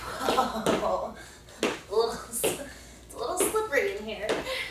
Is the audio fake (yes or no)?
no